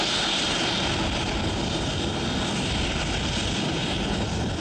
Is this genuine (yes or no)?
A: yes